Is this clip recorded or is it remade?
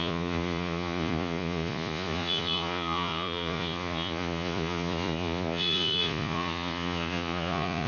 remade